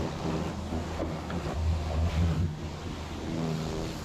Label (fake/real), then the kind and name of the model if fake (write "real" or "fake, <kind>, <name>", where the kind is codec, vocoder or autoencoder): real